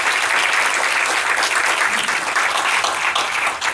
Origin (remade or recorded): recorded